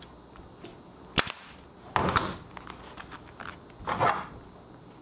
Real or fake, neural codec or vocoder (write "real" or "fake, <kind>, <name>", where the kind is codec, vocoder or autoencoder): real